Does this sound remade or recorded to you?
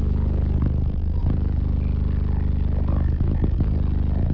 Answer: recorded